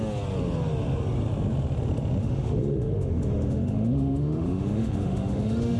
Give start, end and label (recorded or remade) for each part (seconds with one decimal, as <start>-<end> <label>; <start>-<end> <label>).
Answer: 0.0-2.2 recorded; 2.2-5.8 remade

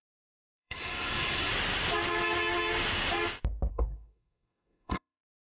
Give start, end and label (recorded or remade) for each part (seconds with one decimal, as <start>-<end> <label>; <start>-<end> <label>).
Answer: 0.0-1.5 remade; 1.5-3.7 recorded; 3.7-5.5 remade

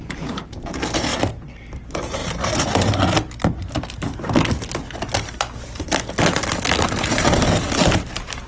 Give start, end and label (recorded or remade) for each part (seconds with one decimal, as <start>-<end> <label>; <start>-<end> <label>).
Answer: 0.0-1.1 recorded; 1.1-1.7 remade; 1.7-8.5 recorded

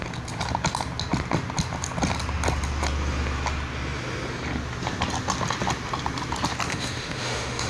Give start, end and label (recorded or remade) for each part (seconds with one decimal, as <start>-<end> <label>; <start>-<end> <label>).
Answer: 0.0-6.7 recorded; 6.7-7.7 remade

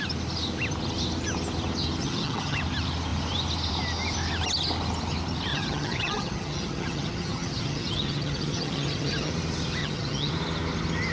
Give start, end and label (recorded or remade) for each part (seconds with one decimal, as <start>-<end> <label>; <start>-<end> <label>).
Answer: 0.0-2.0 recorded; 2.0-2.6 remade; 2.6-5.5 recorded; 5.5-9.3 remade; 9.3-9.8 recorded; 9.8-10.3 remade; 10.3-11.1 recorded